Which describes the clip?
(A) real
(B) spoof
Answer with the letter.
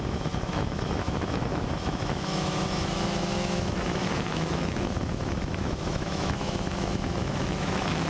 B